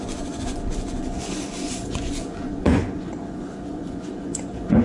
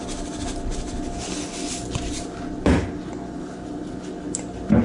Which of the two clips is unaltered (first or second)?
second